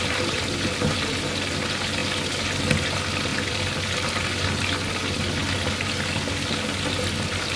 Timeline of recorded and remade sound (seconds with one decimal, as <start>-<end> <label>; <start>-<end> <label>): 0.0-3.3 recorded; 3.3-3.8 remade; 3.8-7.6 recorded